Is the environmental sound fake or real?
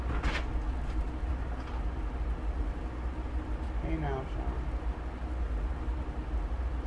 real